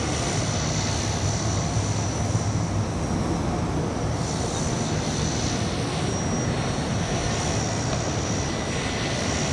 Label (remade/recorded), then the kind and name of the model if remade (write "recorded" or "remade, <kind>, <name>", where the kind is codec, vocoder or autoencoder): recorded